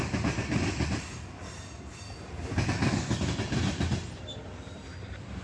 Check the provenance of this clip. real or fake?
fake